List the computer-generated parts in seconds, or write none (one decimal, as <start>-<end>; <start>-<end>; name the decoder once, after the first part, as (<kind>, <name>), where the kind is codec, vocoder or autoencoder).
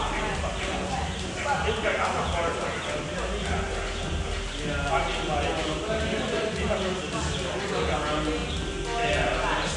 none